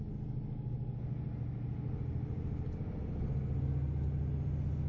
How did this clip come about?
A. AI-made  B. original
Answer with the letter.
B